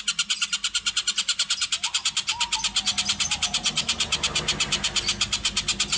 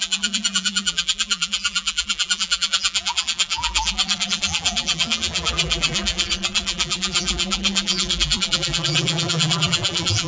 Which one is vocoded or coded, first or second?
second